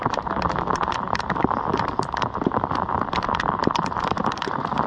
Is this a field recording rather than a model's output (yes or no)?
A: yes